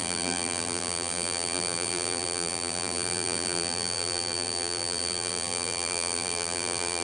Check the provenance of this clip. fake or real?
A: fake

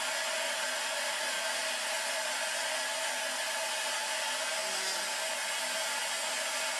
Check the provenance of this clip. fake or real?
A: real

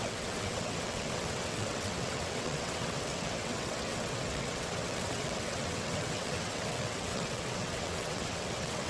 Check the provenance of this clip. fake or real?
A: fake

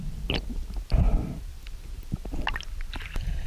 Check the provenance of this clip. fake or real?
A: real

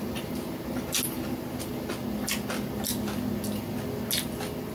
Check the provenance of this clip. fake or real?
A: real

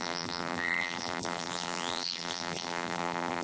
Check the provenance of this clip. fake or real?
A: fake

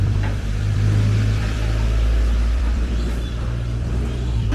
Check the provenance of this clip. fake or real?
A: fake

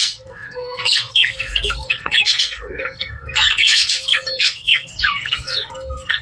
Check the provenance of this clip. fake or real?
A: fake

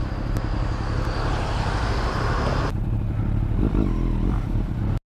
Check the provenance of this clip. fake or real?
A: real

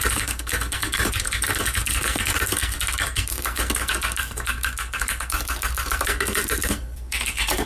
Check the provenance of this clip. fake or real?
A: fake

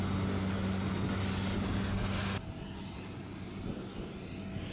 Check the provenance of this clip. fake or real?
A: real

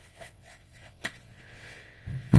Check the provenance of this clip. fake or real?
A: fake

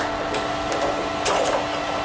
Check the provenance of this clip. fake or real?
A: real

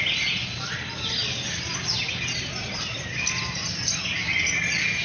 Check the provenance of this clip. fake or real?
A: real